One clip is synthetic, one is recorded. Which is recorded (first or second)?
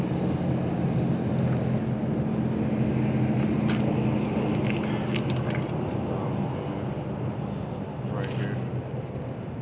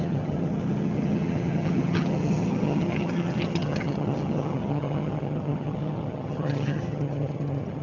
first